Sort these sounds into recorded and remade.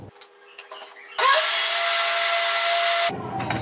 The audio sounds recorded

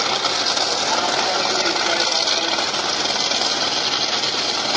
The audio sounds recorded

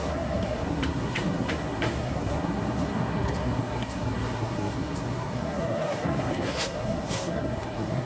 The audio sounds remade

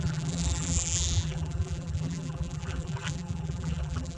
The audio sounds remade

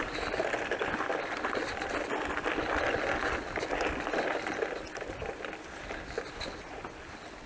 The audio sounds recorded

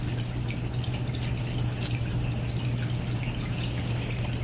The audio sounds recorded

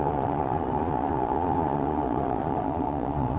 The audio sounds remade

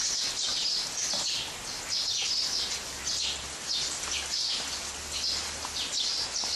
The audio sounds recorded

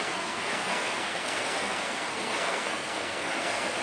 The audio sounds remade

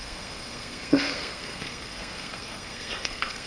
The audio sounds remade